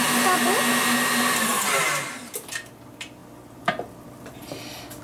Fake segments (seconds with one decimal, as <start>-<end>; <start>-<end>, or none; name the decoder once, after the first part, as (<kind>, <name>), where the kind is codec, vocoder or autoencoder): 1.5-2.2 (vocoder, BigVGAN v2)